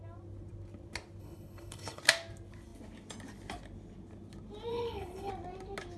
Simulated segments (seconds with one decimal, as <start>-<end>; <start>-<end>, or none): 1.2-2.0; 4.7-5.3